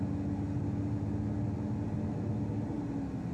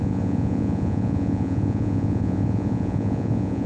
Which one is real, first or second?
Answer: first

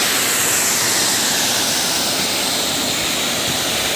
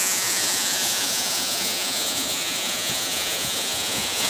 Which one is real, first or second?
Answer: first